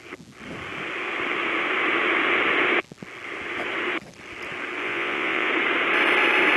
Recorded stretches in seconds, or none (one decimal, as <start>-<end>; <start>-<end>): 0.0-4.8; 5.5-6.6